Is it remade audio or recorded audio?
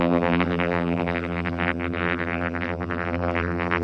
remade